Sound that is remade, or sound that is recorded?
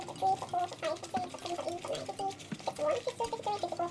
recorded